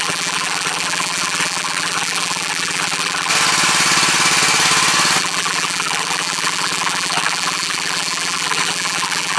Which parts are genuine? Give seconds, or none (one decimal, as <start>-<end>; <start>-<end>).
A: 3.3-5.2